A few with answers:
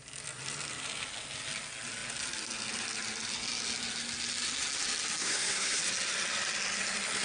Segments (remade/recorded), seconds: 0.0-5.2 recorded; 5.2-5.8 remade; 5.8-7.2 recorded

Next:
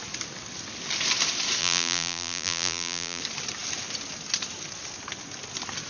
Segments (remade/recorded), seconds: 0.0-1.6 recorded; 1.6-3.2 remade; 3.2-5.9 recorded

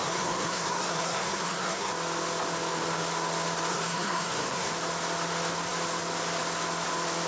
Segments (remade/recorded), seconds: 0.0-1.9 remade; 1.9-3.7 recorded; 3.7-4.7 remade; 4.7-7.3 recorded

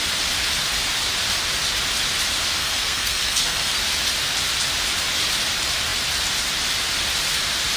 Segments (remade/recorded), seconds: 0.0-2.6 recorded; 2.6-3.8 remade; 3.8-7.8 recorded

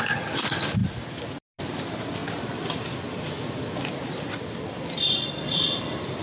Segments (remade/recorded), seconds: 0.0-6.2 recorded

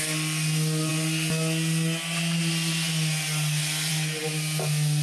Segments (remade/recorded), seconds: 0.0-5.0 recorded